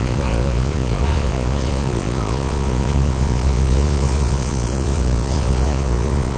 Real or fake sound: fake